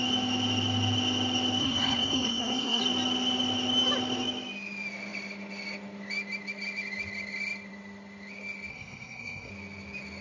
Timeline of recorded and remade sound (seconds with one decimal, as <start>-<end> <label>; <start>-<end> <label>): 0.0-1.6 recorded; 1.6-2.8 remade; 2.8-8.7 recorded; 8.7-9.5 remade; 9.5-10.2 recorded